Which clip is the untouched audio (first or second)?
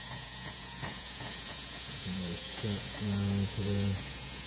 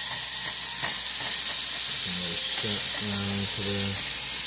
second